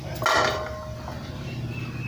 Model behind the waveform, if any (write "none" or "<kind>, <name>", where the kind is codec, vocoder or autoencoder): none